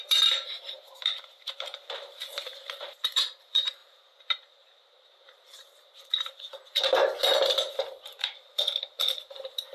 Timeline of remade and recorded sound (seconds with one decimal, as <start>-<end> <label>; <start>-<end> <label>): 0.0-9.7 remade